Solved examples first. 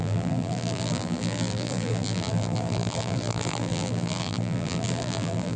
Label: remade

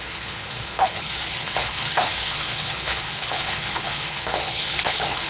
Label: remade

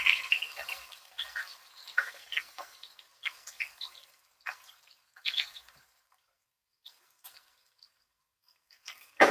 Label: remade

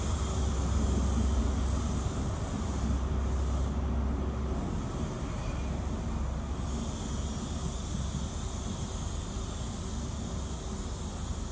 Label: recorded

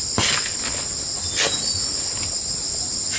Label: recorded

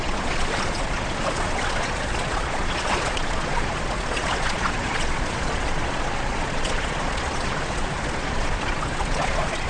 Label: remade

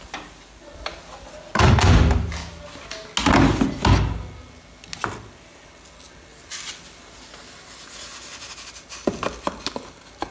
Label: recorded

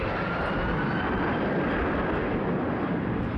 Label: recorded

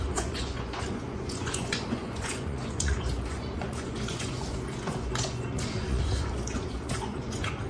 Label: remade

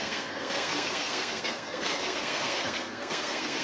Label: remade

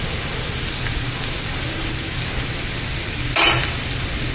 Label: recorded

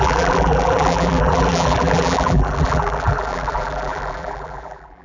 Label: remade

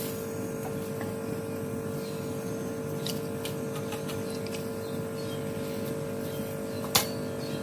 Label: recorded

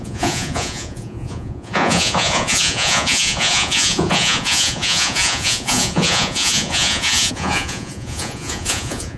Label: remade